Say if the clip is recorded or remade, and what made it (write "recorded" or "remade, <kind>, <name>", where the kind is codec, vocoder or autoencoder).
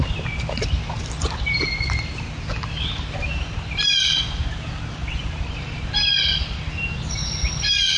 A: recorded